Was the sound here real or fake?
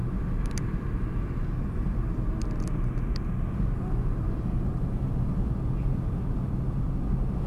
real